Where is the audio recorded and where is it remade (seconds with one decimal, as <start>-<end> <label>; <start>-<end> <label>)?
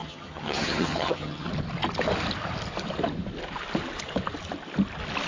0.0-1.5 remade; 1.5-5.3 recorded